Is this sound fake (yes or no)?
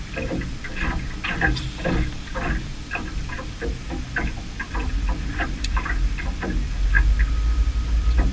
no